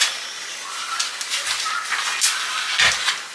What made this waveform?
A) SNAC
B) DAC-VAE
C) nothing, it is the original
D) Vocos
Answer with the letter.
C